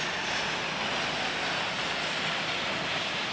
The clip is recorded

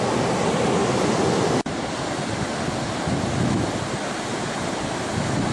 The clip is recorded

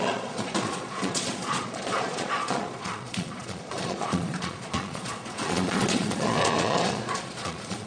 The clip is remade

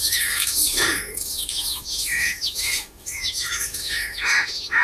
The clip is remade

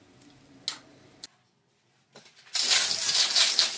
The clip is recorded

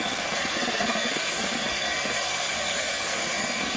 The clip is remade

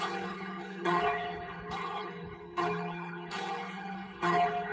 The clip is remade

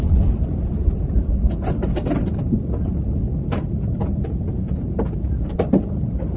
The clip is remade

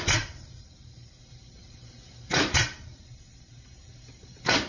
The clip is remade